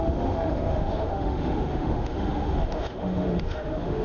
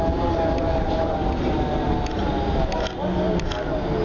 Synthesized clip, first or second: first